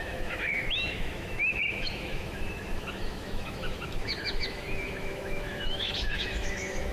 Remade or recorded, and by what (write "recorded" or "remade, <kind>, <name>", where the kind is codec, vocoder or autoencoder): remade, autoencoder, DAC-VAE